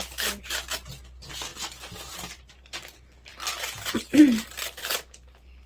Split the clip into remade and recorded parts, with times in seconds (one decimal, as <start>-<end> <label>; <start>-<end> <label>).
0.0-5.7 recorded